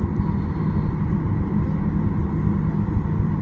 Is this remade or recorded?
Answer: recorded